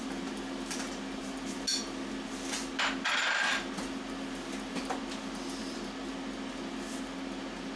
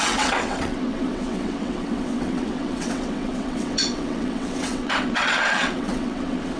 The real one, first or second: first